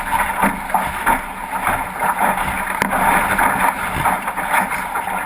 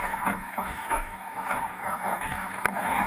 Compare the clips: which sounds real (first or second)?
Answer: first